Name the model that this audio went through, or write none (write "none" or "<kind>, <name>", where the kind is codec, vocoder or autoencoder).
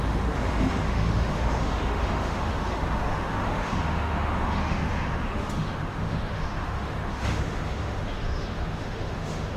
autoencoder, DAC-VAE